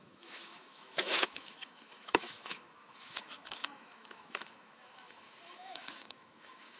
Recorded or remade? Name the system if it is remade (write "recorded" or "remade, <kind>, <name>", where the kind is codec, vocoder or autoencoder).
remade, autoencoder, DAC-VAE